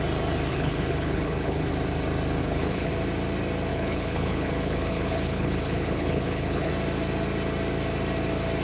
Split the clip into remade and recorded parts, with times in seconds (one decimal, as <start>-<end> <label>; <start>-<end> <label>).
0.0-0.5 recorded; 0.5-1.7 remade; 1.7-2.4 recorded; 2.4-2.9 remade; 2.9-3.7 recorded; 3.7-6.7 remade; 6.7-8.6 recorded